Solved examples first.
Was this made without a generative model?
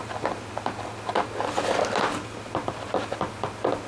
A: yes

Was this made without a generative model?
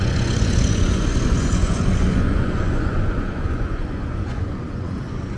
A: no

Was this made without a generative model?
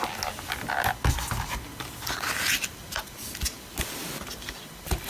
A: yes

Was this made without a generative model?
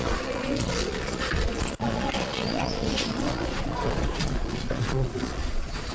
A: no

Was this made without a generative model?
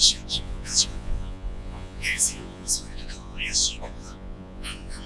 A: no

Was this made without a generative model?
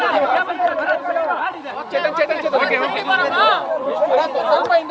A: yes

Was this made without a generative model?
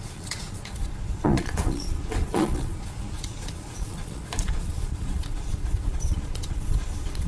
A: no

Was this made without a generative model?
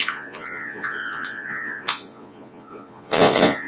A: no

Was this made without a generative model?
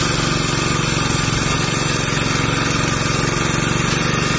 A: yes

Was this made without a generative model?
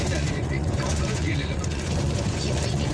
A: no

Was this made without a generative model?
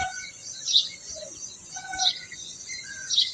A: no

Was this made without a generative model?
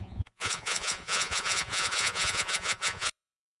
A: no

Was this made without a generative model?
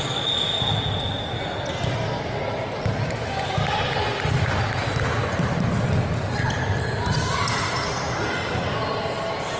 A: yes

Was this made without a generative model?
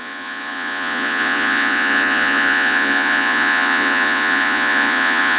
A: no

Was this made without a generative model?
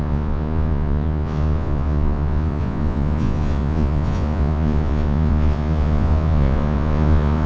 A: no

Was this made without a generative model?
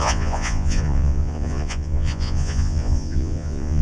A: no